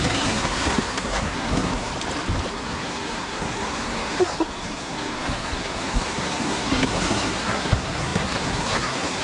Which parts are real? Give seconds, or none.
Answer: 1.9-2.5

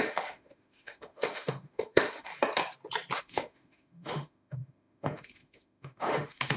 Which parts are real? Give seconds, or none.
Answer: 2.3-3.2

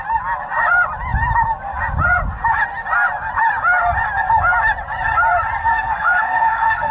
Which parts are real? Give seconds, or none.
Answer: 0.0-5.6